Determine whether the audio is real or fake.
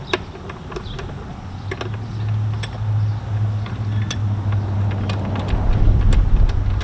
real